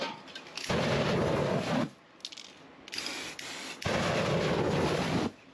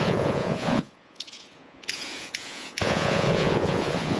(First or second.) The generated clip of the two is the second